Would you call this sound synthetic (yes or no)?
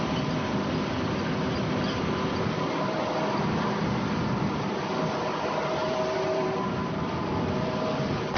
yes